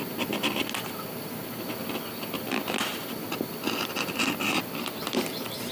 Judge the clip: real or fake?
real